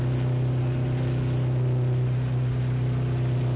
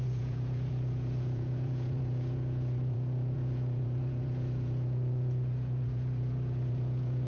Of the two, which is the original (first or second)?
first